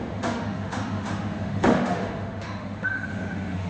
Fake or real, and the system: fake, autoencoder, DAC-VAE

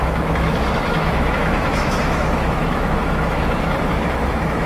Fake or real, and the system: fake, autoencoder, DAC-VAE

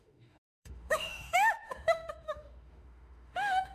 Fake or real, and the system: fake, autoencoder, DAC-VAE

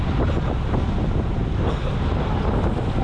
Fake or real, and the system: real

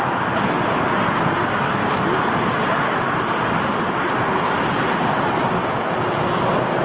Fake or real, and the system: real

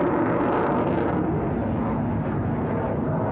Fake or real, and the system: real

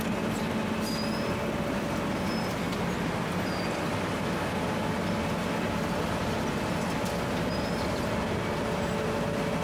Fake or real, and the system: real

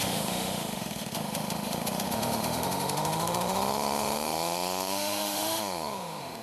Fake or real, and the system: fake, autoencoder, DAC-VAE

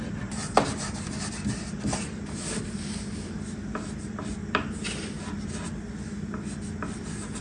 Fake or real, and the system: real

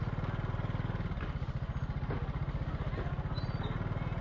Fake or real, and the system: real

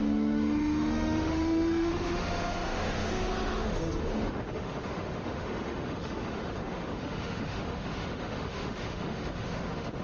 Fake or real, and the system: fake, autoencoder, DAC-VAE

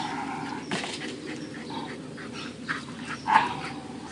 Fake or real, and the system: real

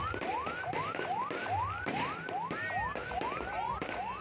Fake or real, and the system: real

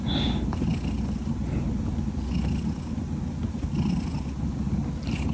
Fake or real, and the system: real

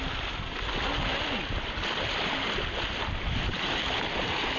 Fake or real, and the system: real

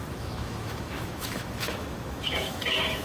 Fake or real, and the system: fake, autoencoder, DAC-VAE